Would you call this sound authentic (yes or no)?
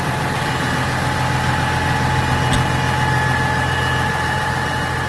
yes